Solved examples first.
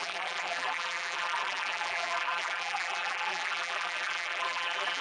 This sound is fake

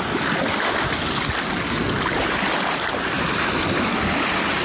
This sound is real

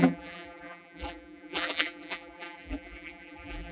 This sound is fake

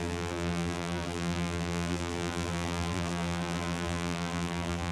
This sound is fake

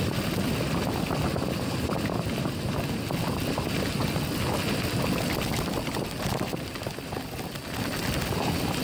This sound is real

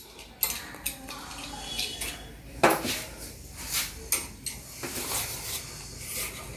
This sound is real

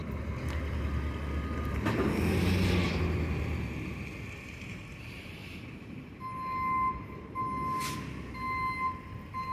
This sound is real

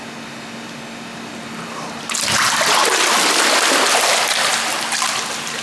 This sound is real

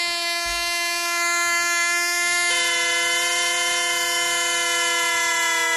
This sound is real